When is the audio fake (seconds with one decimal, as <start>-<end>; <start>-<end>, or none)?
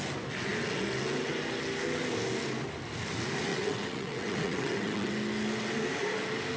3.5-5.1